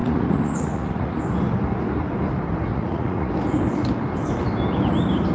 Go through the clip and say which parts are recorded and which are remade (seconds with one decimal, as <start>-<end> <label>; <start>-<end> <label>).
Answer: 0.0-1.2 remade; 1.2-2.7 recorded; 2.7-3.3 remade; 3.3-5.3 recorded

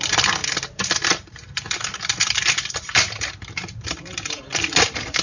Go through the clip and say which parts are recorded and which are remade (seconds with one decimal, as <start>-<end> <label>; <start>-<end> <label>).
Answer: 0.0-0.4 remade; 0.4-3.5 recorded; 3.5-5.2 remade

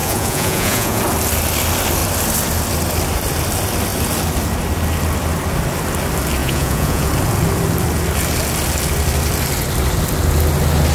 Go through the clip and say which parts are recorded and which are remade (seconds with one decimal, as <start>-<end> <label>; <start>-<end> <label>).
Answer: 0.0-1.0 remade; 1.0-6.4 recorded; 6.4-7.1 remade; 7.1-10.9 recorded

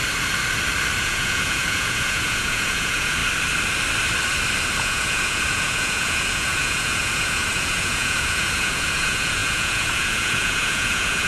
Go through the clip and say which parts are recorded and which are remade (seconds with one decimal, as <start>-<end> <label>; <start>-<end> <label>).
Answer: 0.0-1.0 recorded; 1.0-3.2 remade; 3.2-4.8 recorded; 4.8-11.3 remade

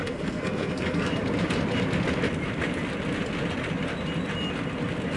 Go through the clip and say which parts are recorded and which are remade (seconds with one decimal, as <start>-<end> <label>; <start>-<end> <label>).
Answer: 0.0-1.1 remade; 1.1-5.2 recorded

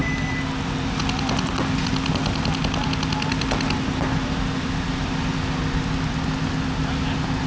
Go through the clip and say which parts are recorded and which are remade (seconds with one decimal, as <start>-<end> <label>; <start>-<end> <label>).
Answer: 0.0-7.5 recorded

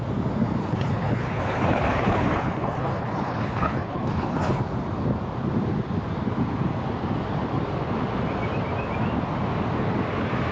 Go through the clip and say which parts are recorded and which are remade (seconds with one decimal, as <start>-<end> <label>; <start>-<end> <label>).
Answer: 0.0-0.6 recorded; 0.6-4.6 remade; 4.6-10.5 recorded

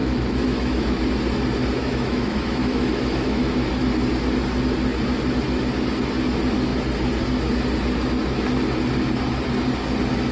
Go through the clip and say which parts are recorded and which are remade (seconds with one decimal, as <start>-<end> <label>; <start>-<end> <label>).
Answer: 0.0-1.0 remade; 1.0-1.8 recorded; 1.8-3.7 remade; 3.7-10.3 recorded